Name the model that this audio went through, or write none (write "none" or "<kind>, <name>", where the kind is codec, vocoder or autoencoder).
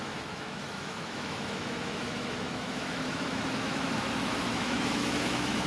autoencoder, DAC-VAE